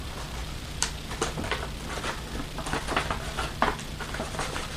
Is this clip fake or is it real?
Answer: real